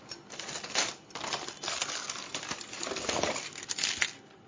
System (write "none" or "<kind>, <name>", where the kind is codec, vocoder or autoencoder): none